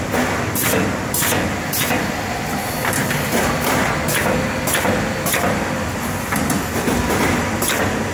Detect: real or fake real